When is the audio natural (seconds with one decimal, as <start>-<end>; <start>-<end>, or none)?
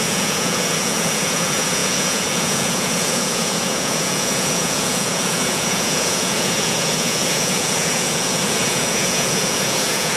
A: none